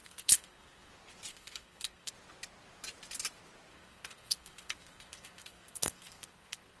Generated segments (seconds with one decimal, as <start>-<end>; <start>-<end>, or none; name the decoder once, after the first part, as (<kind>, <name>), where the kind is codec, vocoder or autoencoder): 0.0-0.9 (codec, SNAC); 1.3-2.1; 3.7-6.8